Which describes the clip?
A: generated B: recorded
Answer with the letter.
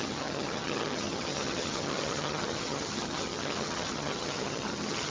A